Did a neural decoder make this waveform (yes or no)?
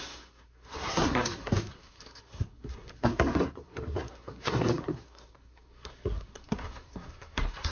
yes